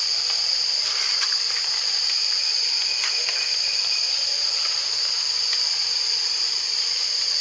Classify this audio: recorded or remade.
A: recorded